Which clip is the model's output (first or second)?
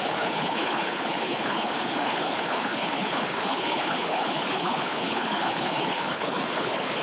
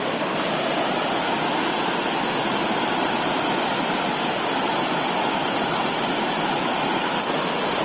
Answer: first